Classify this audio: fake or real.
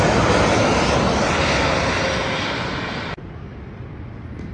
real